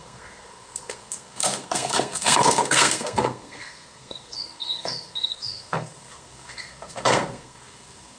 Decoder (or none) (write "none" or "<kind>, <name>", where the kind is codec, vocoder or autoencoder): codec, SNAC